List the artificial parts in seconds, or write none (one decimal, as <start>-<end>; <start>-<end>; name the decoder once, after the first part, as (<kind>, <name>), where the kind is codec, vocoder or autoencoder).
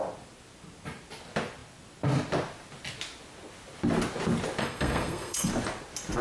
4.6-5.5 (codec, SNAC)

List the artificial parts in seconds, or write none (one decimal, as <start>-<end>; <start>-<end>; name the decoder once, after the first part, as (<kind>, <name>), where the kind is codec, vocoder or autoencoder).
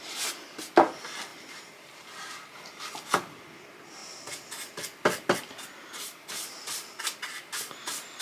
1.3-2.5 (vocoder, BigVGAN v2); 5.8-6.7